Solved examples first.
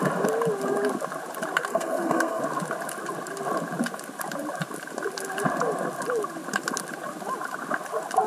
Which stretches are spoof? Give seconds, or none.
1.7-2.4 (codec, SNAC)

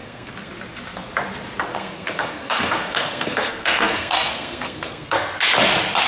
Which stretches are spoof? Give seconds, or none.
0.0-0.5 (codec, SNAC); 1.7-5.4

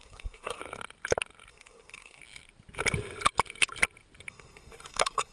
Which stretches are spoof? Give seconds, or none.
0.0-0.6 (codec, SNAC); 1.5-2.2; 4.3-5.3

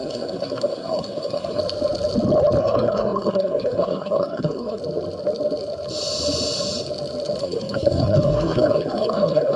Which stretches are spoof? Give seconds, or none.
0.0-1.6 (codec, SNAC); 2.6-4.8; 7.4-9.6

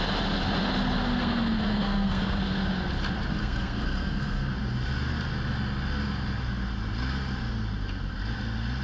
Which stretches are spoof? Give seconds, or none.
1.2-2.4 (codec, SNAC); 3.4-4.5

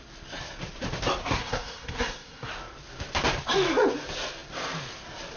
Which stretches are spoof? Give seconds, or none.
1.2-2.5 (codec, SNAC)